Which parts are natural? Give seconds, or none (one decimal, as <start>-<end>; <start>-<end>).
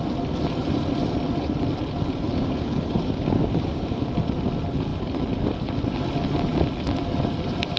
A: 0.0-2.3; 4.1-7.8